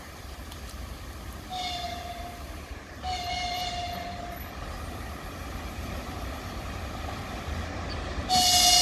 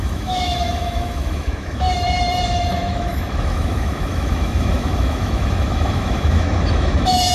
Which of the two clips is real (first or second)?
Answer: first